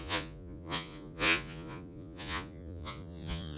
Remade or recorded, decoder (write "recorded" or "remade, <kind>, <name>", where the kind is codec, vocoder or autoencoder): remade, vocoder, Vocos